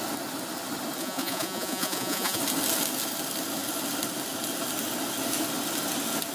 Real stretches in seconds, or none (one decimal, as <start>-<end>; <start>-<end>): 0.0-1.0; 2.4-6.3